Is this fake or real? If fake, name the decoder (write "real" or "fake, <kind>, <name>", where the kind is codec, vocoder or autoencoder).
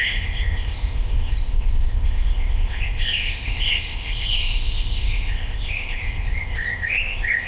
fake, codec, ZipCodec